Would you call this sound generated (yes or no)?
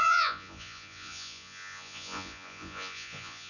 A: yes